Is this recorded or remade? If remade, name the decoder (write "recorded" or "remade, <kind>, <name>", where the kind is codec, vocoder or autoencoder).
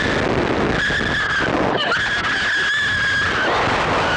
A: recorded